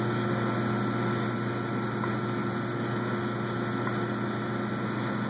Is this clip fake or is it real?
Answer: real